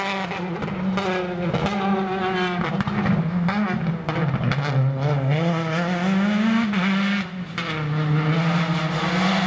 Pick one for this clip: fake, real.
real